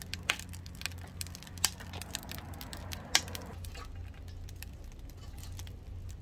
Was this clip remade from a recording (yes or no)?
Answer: no